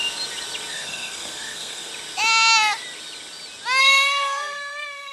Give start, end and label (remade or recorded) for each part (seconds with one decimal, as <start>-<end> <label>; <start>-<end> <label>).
0.0-0.7 recorded; 0.7-1.9 remade; 1.9-3.8 recorded; 3.8-5.1 remade